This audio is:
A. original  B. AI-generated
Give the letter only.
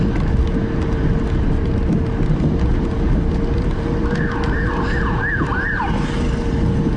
A